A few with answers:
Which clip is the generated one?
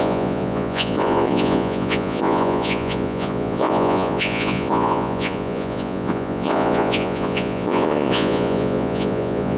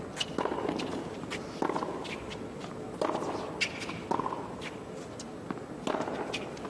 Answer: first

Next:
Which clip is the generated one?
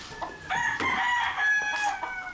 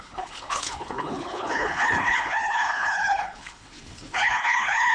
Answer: second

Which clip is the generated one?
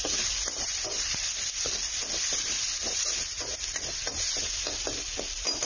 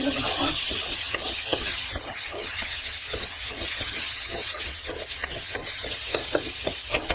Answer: second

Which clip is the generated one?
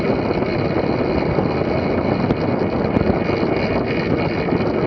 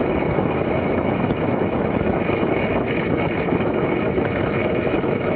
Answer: second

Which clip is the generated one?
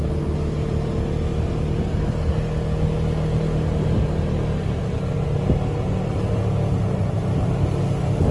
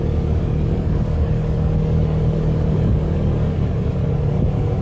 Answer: second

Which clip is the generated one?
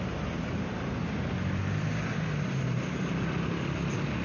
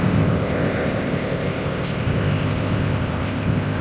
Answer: second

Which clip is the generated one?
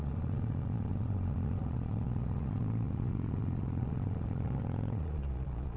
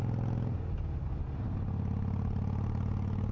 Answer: first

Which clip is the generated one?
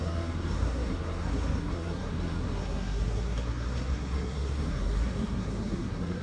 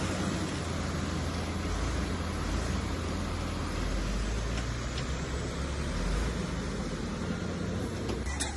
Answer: first